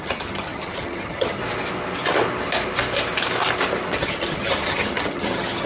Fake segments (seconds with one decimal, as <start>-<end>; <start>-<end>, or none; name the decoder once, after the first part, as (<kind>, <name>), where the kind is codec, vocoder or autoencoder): 0.0-1.4 (vocoder, HiFi-GAN); 3.9-5.7